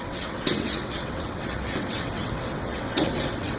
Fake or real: fake